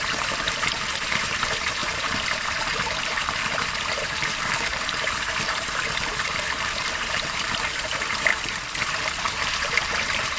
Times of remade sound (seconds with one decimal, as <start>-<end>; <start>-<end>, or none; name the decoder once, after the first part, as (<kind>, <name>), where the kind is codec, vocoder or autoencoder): 0.0-8.3 (vocoder, BigVGAN v2); 8.8-10.4